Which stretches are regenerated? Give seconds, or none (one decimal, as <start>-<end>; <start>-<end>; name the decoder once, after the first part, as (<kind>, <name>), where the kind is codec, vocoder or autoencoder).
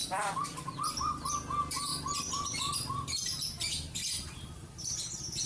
0.0-0.8 (vocoder, BigVGAN v2)